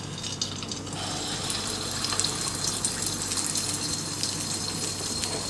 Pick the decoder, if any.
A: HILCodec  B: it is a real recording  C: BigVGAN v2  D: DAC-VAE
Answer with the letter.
B